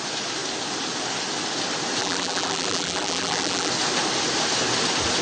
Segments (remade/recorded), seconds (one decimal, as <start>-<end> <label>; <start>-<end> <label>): 0.0-2.0 recorded; 2.0-3.7 remade; 3.7-5.2 recorded